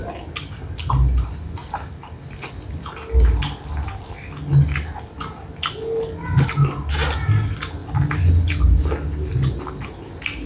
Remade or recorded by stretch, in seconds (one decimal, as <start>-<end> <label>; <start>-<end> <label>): 0.0-10.5 recorded